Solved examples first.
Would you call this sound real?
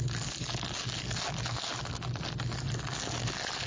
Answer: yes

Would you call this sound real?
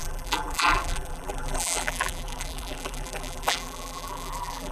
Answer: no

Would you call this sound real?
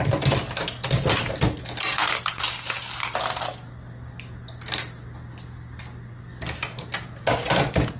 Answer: yes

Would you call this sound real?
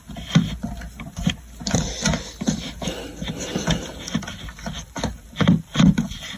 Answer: no